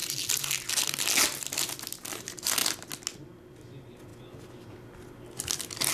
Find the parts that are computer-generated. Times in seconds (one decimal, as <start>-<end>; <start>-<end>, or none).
none